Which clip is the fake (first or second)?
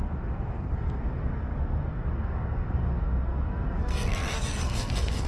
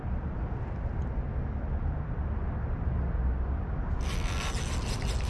first